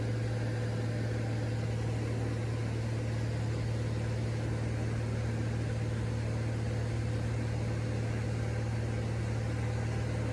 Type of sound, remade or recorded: recorded